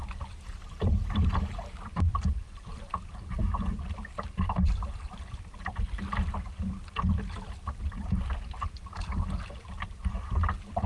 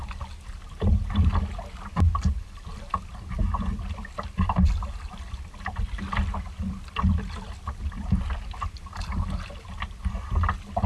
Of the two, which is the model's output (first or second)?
first